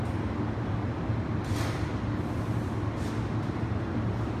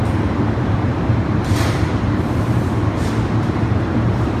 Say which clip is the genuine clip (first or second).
first